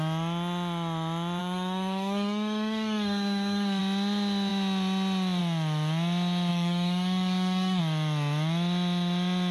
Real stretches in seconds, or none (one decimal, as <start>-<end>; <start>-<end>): 0.0-1.4; 3.8-6.5; 7.8-9.5